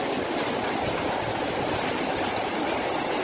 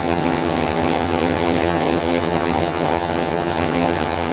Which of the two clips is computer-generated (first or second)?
second